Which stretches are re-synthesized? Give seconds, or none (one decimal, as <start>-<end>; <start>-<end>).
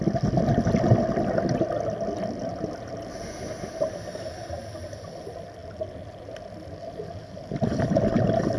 none